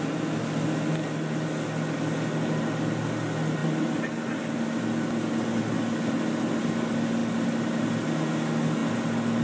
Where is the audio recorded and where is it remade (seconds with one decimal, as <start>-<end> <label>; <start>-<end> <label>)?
0.0-9.4 recorded